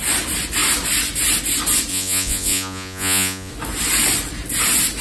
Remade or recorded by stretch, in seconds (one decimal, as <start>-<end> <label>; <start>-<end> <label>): 0.0-1.9 recorded; 1.9-3.5 remade; 3.5-5.0 recorded